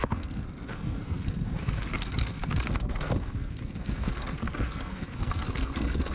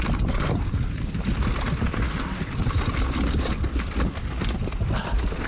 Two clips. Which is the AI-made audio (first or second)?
first